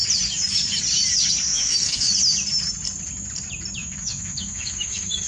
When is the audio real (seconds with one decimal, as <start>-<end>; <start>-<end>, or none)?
0.0-1.5; 2.1-3.8